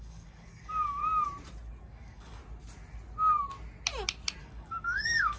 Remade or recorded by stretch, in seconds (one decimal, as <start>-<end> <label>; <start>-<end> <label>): 0.0-1.0 remade; 1.0-1.8 recorded; 1.8-2.4 remade; 2.4-4.4 recorded; 4.4-5.4 remade